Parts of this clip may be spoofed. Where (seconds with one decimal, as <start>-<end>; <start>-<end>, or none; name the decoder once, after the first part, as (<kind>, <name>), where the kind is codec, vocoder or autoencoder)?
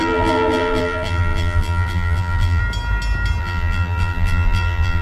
0.0-2.6 (vocoder, BigVGAN v2); 3.4-5.0